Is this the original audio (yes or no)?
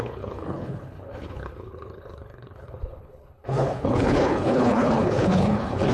no